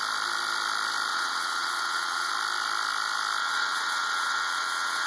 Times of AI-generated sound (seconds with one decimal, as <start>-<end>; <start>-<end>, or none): 1.1-2.3; 3.4-5.1